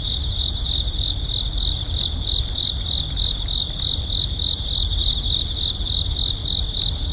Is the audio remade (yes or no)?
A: no